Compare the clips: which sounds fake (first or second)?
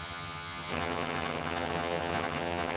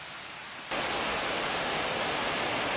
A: first